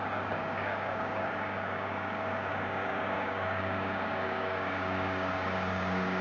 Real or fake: fake